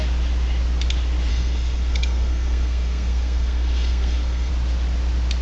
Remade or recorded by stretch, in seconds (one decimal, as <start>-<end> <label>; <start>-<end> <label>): 0.0-1.3 recorded; 1.3-4.5 remade; 4.5-5.4 recorded